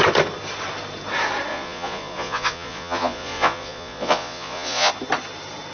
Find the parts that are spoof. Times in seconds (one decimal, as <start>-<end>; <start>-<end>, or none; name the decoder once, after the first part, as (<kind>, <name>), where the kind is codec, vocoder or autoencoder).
1.5-4.9 (vocoder, Vocos)